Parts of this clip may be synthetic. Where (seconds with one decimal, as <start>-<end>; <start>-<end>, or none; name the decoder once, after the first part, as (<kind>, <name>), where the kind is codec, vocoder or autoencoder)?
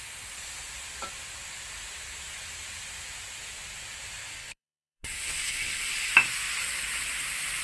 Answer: 4.3-6.1 (codec, HILCodec)